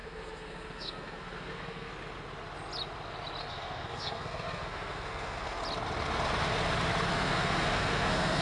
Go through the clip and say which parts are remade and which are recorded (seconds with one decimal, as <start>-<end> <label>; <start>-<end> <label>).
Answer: 0.0-1.9 remade; 1.9-3.4 recorded; 3.4-5.6 remade; 5.6-7.1 recorded; 7.1-8.4 remade